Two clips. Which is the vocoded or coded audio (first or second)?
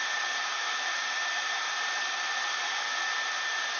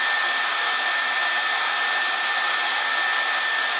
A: first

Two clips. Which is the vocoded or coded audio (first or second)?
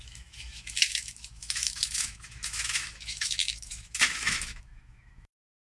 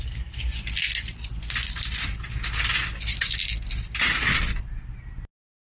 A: first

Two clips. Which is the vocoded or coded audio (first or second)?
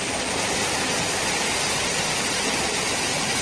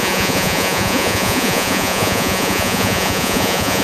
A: second